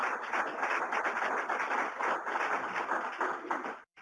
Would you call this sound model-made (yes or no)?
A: no